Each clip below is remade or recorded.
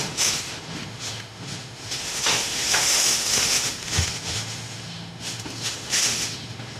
remade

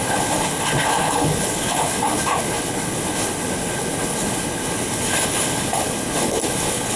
remade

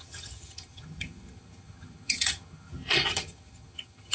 remade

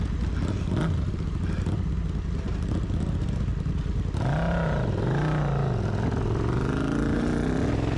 recorded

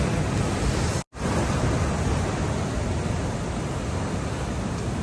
recorded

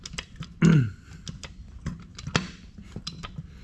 recorded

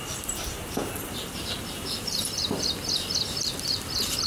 remade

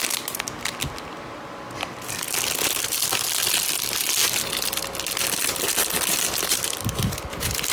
recorded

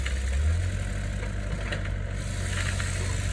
recorded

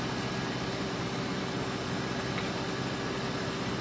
recorded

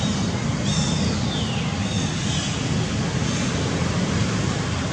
remade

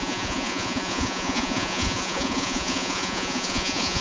remade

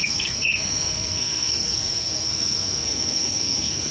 remade